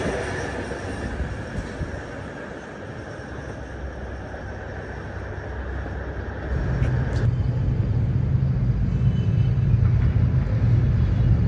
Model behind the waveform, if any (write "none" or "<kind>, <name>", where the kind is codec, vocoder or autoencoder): none